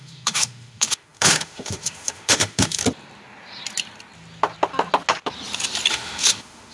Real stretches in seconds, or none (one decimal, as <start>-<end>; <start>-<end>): 2.8-5.9